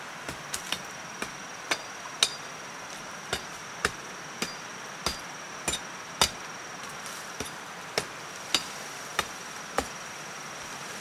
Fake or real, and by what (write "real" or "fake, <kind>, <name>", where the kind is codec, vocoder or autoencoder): real